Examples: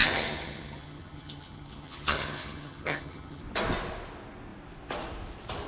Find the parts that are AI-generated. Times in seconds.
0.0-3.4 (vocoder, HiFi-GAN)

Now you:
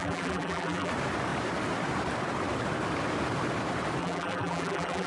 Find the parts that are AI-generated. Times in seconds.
0.0-0.9 (vocoder, BigVGAN v2); 4.0-5.1